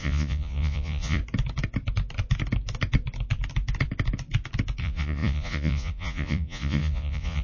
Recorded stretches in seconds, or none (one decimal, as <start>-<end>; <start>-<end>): 1.2-4.8